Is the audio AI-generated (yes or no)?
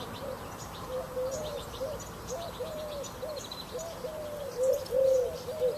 yes